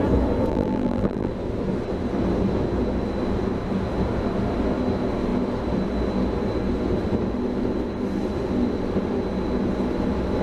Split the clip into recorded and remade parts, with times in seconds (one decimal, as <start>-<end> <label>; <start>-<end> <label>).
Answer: 0.0-0.5 recorded; 0.5-1.3 remade; 1.3-10.4 recorded